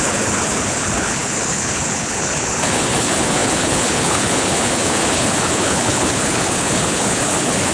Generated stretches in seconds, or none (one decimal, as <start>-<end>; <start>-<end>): 0.0-7.7